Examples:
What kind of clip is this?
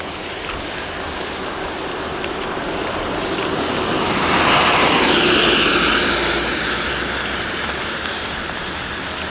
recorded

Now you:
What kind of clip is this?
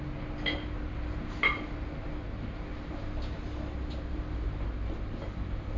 recorded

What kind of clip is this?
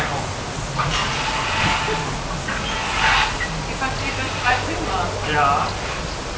recorded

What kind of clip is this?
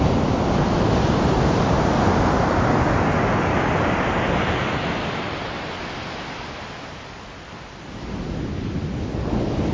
recorded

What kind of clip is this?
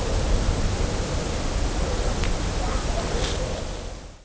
recorded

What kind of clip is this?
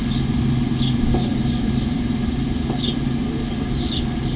recorded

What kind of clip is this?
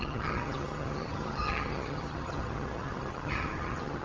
remade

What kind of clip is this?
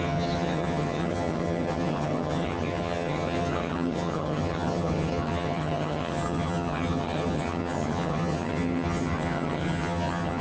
remade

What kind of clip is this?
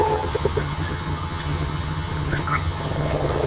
remade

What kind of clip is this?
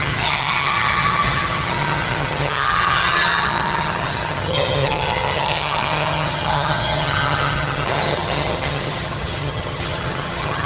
remade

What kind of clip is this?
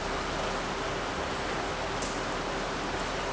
recorded